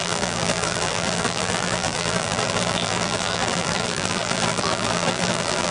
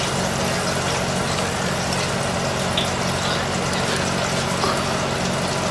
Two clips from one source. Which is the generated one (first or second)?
first